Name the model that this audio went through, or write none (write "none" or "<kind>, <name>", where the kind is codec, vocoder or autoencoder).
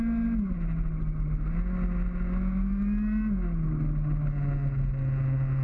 none